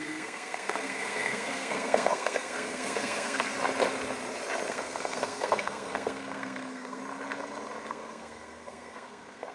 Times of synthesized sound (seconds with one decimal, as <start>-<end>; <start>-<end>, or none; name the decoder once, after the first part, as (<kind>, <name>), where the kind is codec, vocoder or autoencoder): 0.0-3.5 (codec, SNAC); 4.7-7.0; 7.9-9.5